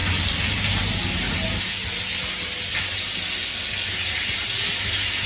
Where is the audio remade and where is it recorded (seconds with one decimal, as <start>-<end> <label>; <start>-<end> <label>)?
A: 0.0-5.3 recorded